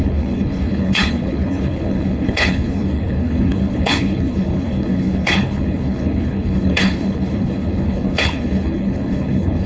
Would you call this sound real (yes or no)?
no